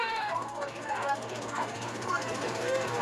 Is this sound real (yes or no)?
no